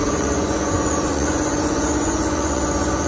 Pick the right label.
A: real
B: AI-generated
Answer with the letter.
B